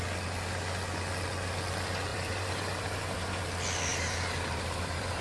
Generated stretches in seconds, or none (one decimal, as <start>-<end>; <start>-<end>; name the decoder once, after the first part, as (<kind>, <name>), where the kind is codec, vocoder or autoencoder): 2.1-3.4 (vocoder, BigVGAN v2); 3.9-5.2